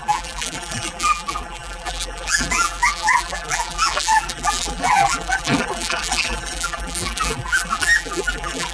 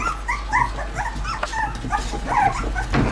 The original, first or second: second